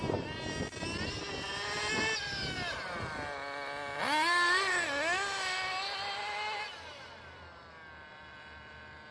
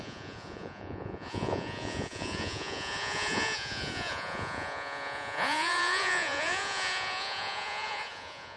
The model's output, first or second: second